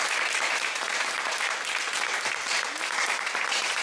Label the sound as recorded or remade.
recorded